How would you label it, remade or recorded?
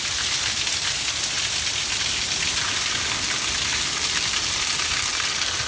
recorded